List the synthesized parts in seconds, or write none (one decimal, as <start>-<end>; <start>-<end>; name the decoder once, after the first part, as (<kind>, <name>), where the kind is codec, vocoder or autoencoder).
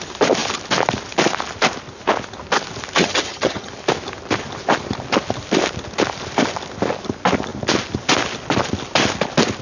3.0-3.7 (vocoder, HiFi-GAN)